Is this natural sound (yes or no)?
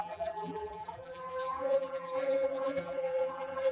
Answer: no